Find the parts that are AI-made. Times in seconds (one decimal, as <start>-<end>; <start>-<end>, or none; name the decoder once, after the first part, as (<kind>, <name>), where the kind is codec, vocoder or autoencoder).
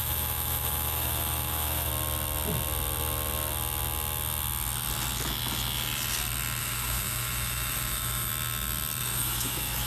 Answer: 0.0-1.9 (autoencoder, DAC-VAE); 6.6-8.3; 9.0-9.9